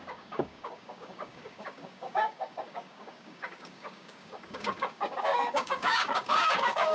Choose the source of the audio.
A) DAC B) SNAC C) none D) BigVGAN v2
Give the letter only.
A